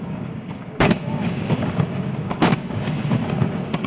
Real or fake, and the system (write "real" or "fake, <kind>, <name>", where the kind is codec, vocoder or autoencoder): fake, codec, DAC